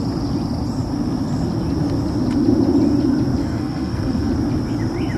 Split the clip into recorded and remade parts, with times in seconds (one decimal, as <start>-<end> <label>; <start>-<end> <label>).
0.0-3.4 recorded; 3.4-4.3 remade; 4.3-5.2 recorded